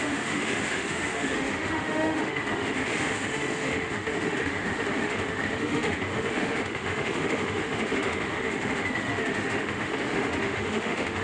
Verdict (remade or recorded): remade